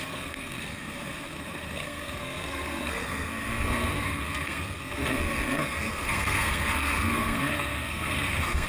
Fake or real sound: fake